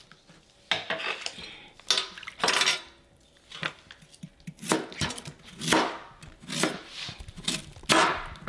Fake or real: real